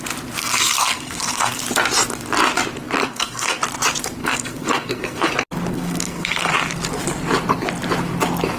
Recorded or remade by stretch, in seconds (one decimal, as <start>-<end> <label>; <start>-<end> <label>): 0.0-0.4 recorded; 0.4-1.6 remade; 1.6-3.0 recorded; 3.0-3.6 remade; 3.6-4.2 recorded; 4.2-5.3 remade; 5.3-5.7 recorded; 5.7-6.5 remade; 6.5-8.6 recorded